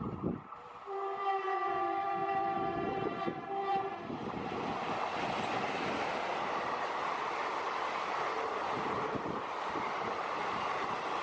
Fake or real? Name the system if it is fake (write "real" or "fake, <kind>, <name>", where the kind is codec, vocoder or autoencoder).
fake, vocoder, BigVGAN v2